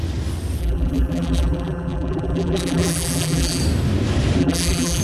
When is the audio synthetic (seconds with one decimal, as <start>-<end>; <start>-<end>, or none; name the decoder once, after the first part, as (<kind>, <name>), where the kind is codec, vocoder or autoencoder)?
0.6-3.6 (vocoder, BigVGAN v2); 4.4-5.0